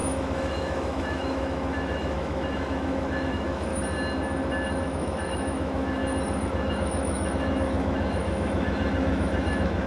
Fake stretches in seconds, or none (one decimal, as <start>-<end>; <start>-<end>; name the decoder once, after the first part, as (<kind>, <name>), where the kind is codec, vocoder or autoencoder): 0.0-3.7 (autoencoder, DAC-VAE); 4.8-6.0; 6.5-9.9